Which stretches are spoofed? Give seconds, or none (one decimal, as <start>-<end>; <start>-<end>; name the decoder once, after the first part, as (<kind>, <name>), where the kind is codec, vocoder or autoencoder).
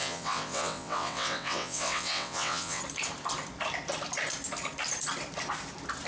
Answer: 0.0-2.8 (vocoder, WaveNeXt)